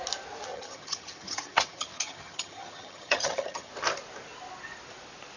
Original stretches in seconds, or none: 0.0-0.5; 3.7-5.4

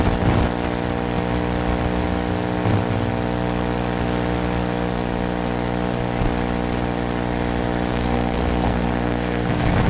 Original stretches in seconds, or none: 0.0-7.9

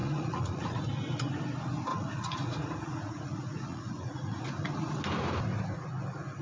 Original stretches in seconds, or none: 0.8-1.9; 5.0-6.4

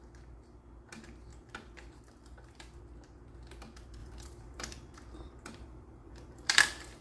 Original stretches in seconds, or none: 0.0-1.3; 2.8-4.0; 6.6-7.0

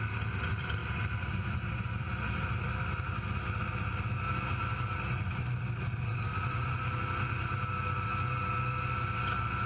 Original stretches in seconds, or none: 0.0-9.7

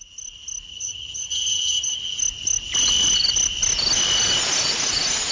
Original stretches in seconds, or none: 0.0-0.7; 2.2-5.3

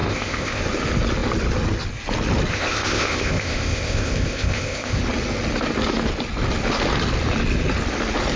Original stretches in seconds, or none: 0.6-2.5; 5.0-8.4